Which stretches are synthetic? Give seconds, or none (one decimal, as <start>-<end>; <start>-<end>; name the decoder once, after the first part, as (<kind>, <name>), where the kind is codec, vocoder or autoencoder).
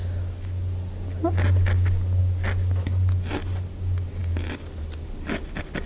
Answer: none